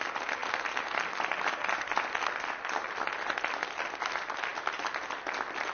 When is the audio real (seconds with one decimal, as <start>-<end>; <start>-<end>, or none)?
0.0-5.7

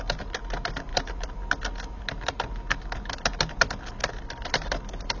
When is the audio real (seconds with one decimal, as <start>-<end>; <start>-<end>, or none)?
0.0-5.2

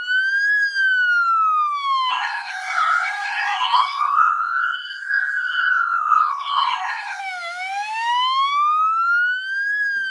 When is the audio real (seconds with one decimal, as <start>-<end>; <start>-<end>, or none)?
0.0-2.1; 7.2-10.1

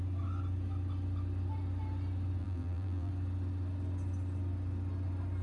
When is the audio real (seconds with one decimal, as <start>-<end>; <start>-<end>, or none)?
0.0-2.4; 3.1-5.4